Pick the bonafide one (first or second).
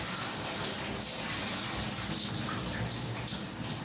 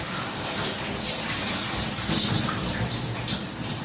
first